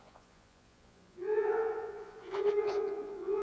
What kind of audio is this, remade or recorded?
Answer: remade